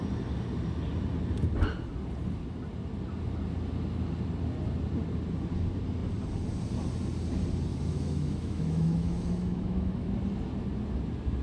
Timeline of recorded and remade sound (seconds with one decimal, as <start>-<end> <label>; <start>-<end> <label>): 0.0-7.7 recorded; 7.7-10.1 remade; 10.1-11.4 recorded